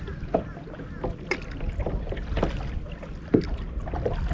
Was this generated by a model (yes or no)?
no